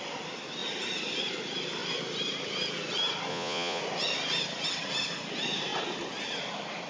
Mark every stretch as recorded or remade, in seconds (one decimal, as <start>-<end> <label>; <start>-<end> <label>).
0.0-3.3 recorded; 3.3-3.8 remade; 3.8-6.9 recorded